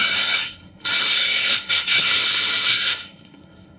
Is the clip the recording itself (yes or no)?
no